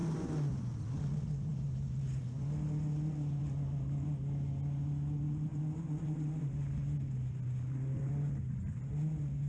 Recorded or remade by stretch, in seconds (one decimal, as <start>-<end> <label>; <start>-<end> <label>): 0.0-9.5 recorded